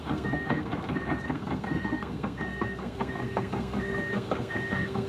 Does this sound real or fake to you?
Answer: fake